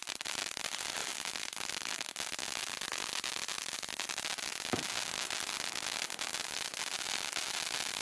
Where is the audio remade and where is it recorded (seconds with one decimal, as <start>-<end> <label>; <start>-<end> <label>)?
0.0-8.0 recorded